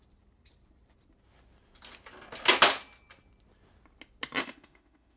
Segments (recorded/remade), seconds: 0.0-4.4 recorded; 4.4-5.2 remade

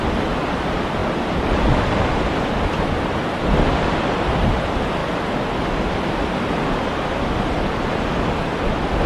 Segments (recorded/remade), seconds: 0.0-1.0 recorded; 1.0-3.4 remade; 3.4-9.1 recorded

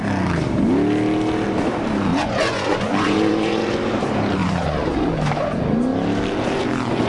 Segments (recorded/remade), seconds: 0.0-2.1 recorded; 2.1-3.6 remade; 3.6-4.4 recorded; 4.4-4.9 remade; 4.9-7.1 recorded

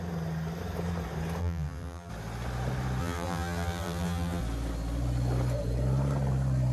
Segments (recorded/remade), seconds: 0.0-1.4 recorded; 1.4-2.1 remade; 2.1-3.0 recorded; 3.0-4.4 remade; 4.4-6.7 recorded